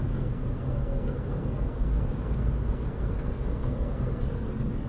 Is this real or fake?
fake